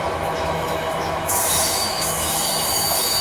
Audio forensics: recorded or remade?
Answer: remade